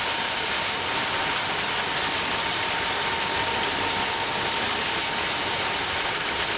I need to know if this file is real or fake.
real